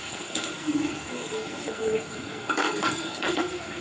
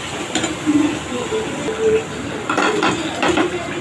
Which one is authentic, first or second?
second